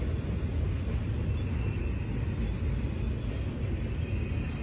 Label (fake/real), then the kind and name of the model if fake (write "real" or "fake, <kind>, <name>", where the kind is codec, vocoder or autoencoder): real